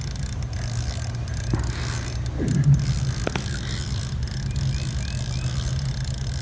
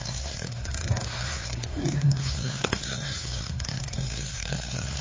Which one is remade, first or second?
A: second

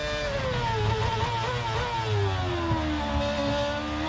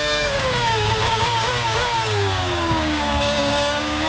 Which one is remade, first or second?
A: second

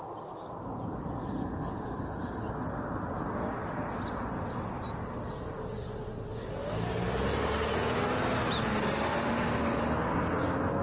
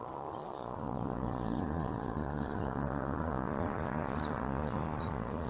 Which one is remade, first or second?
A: second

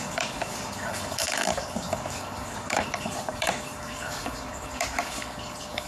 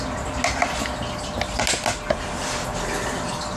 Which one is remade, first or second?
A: first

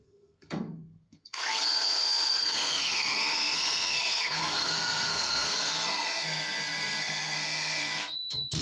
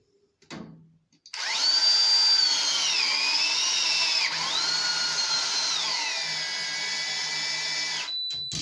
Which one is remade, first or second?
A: first